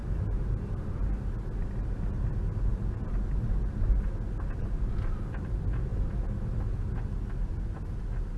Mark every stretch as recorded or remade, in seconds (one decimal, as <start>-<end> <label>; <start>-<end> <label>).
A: 0.0-8.4 recorded